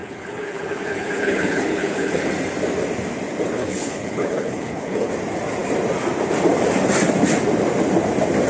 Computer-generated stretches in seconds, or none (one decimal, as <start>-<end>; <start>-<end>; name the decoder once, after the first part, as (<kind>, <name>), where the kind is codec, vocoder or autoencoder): 0.0-2.3 (codec, HILCodec); 3.6-5.1